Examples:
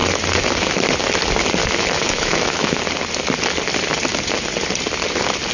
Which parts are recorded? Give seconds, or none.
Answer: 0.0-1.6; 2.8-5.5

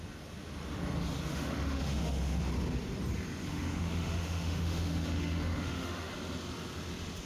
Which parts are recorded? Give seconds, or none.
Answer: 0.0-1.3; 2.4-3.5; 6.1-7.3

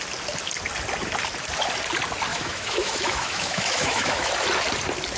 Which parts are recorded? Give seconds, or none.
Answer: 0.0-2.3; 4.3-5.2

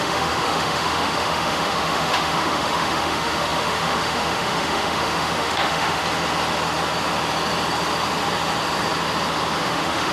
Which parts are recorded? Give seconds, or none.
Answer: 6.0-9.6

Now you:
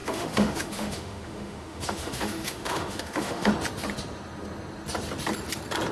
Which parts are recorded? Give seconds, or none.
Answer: 3.5-5.9

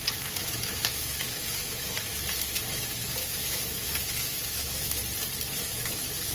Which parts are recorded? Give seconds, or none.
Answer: 5.0-5.6

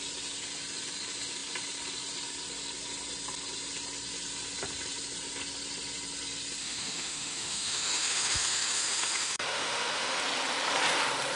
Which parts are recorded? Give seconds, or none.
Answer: 0.0-6.6; 10.2-11.4